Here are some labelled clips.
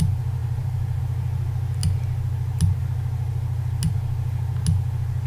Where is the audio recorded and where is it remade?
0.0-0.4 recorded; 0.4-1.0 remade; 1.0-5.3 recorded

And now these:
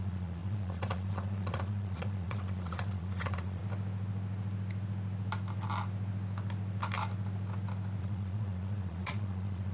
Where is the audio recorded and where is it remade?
0.0-3.6 remade; 3.6-8.0 recorded; 8.0-9.7 remade